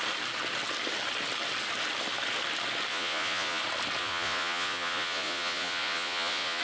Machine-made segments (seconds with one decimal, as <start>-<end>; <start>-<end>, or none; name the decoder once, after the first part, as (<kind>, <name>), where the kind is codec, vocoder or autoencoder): 2.9-3.6 (vocoder, Vocos); 4.0-6.6